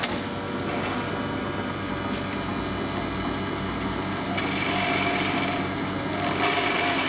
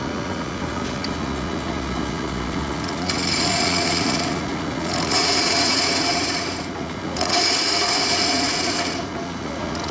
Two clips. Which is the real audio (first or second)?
first